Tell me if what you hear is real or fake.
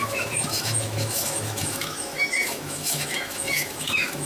fake